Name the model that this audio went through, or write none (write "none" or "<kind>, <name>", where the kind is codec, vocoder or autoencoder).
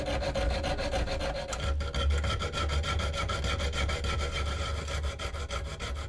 none